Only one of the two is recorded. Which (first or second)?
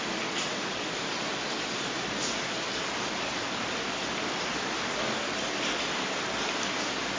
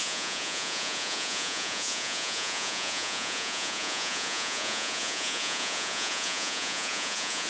first